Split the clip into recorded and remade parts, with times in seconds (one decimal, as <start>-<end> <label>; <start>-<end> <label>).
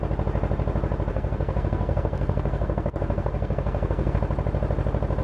0.0-1.1 recorded; 1.1-4.2 remade; 4.2-5.2 recorded